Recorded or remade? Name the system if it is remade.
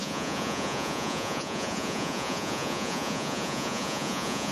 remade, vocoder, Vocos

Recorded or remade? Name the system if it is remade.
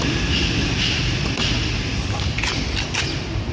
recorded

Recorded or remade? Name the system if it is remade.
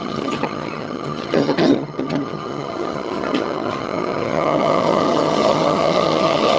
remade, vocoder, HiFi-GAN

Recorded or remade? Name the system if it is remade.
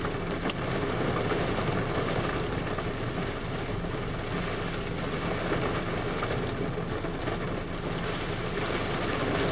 recorded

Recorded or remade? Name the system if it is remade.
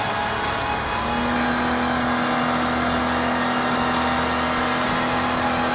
recorded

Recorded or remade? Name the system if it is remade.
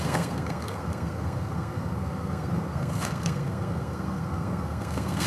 remade, codec, SNAC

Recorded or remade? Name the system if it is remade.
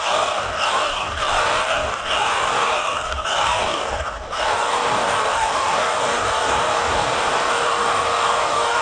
remade, codec, DAC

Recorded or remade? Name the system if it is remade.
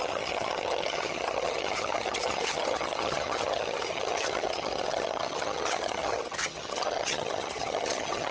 remade, vocoder, HiFi-GAN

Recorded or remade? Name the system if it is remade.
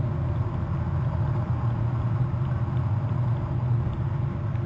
recorded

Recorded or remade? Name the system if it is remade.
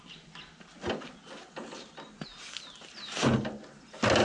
recorded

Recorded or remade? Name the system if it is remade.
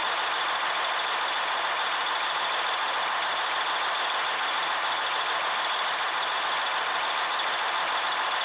recorded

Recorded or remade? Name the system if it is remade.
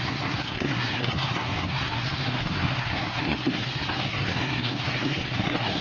remade, codec, SNAC